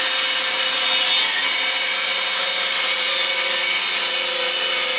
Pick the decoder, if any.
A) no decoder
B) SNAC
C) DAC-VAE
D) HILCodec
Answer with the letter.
A